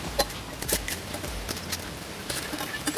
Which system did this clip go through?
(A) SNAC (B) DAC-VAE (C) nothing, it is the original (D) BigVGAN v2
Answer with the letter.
D